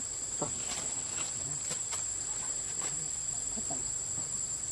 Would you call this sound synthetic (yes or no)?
yes